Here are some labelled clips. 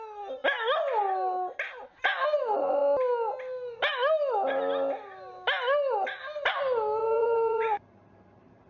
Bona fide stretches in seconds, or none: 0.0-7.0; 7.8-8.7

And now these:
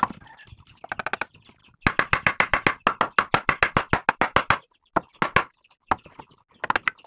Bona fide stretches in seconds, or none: 0.0-7.1

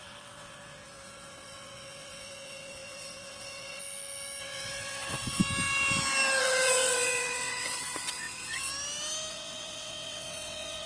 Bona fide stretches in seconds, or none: 3.8-4.4; 5.4-6.4; 8.7-9.3

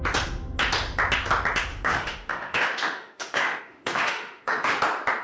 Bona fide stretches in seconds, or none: 0.0-1.7; 4.8-5.2

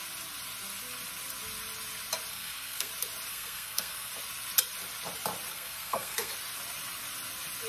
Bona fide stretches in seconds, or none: 0.0-2.3; 2.9-3.3; 4.1-5.5; 6.3-7.7

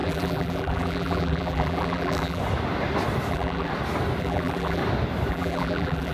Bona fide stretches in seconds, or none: 2.4-3.3; 3.7-4.2; 4.8-5.3

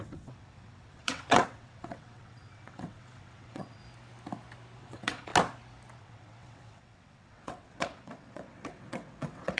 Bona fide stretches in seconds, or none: 3.8-4.8; 5.3-6.0

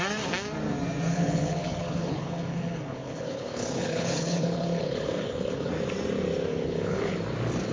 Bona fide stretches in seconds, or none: 0.0-1.1; 5.7-6.5; 7.1-7.7